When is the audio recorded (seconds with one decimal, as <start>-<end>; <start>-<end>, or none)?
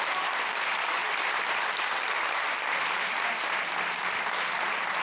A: none